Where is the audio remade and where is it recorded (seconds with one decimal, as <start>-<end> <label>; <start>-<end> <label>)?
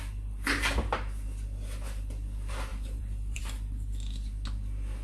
0.0-2.7 recorded; 2.7-3.4 remade; 3.4-5.0 recorded